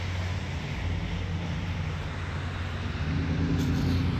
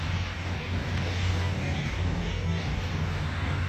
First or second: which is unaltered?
first